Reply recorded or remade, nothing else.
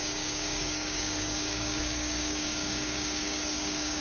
remade